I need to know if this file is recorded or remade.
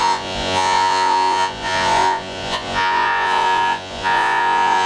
remade